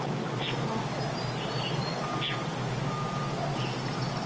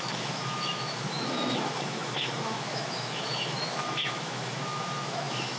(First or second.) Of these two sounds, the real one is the first